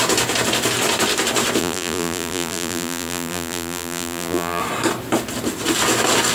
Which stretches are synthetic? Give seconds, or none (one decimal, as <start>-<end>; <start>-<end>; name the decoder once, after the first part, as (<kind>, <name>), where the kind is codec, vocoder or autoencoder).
1.6-4.6 (vocoder, BigVGAN v2)